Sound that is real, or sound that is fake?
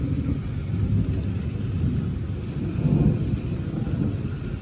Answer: real